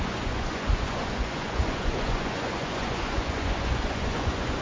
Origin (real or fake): fake